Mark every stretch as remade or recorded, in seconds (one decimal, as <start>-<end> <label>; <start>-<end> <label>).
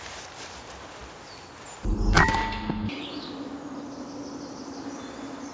0.0-5.5 recorded